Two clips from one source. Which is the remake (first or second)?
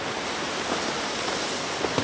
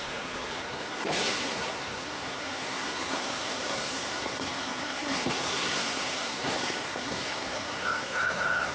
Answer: second